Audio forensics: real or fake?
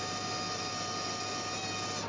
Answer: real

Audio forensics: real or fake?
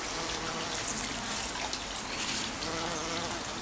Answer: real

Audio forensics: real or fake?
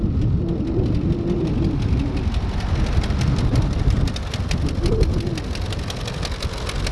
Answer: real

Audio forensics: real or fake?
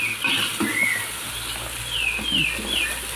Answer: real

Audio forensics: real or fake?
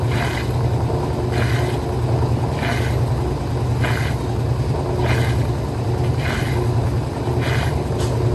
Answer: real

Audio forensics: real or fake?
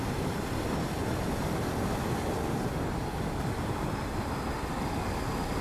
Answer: real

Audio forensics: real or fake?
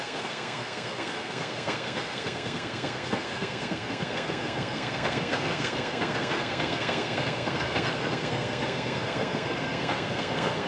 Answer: fake